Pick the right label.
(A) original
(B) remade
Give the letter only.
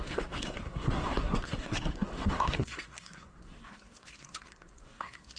B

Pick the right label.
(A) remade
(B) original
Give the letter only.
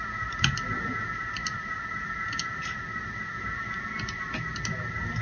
B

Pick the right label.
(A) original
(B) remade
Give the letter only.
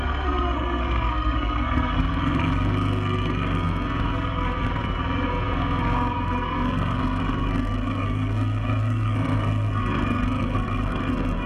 B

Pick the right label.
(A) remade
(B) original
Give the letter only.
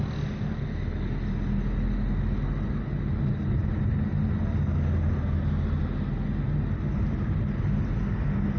B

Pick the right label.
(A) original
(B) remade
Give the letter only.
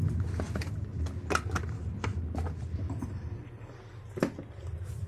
A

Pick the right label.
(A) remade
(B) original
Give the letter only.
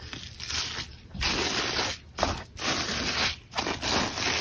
B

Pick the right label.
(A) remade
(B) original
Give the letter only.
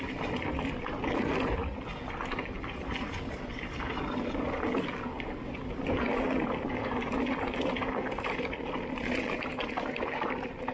B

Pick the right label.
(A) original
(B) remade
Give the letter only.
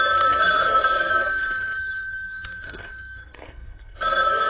B